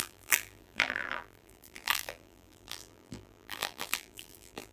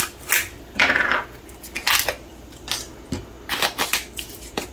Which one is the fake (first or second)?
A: first